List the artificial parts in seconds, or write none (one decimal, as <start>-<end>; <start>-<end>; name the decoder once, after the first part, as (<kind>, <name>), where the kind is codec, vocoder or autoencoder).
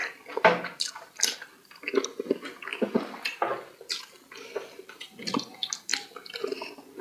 none